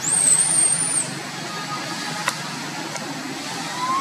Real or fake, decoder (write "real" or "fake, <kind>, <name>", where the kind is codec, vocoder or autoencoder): real